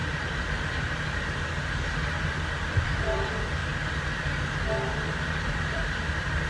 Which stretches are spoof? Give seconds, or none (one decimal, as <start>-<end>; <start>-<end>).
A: 2.8-3.6; 4.4-6.5

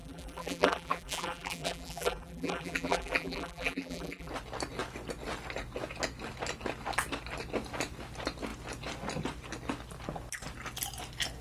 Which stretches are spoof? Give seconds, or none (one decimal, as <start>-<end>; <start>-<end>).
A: 0.0-4.3